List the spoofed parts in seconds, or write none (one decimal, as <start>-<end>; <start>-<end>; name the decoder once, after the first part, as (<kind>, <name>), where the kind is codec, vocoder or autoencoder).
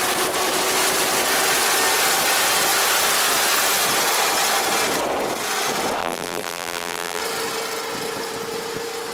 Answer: 6.0-7.2 (vocoder, BigVGAN v2)